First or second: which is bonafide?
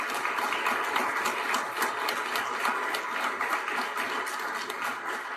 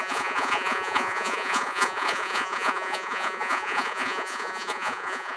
first